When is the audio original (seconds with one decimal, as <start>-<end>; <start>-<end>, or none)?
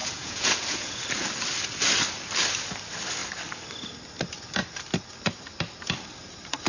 1.0-6.7